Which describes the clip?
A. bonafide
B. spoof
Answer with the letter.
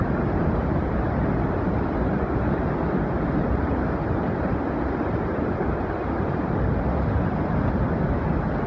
A